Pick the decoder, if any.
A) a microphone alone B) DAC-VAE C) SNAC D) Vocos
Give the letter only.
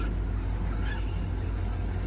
A